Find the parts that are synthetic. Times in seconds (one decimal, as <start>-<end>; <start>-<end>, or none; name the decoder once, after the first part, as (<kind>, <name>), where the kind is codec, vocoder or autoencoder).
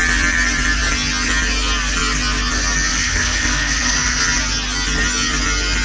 2.9-4.2 (codec, SNAC)